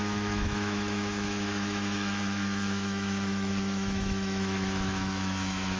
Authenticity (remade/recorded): remade